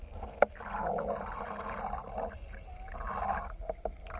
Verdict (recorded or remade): recorded